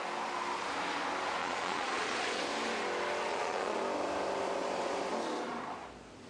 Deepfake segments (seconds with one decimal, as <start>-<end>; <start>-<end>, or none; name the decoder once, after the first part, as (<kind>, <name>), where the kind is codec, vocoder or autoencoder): 1.4-2.4 (vocoder, Vocos); 3.3-3.8